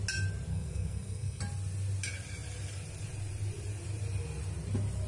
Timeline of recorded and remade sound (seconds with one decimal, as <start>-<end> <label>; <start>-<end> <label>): 0.0-0.5 recorded; 0.5-1.4 remade; 1.4-5.1 recorded